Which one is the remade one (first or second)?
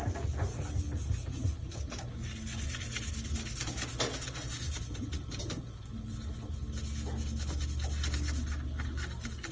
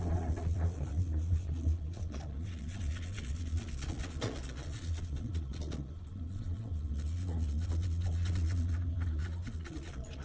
second